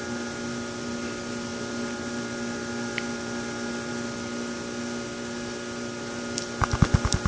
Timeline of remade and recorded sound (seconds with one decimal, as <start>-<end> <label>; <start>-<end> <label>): 0.0-7.3 recorded